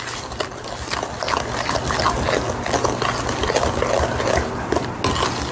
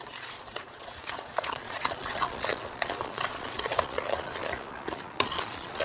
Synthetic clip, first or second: second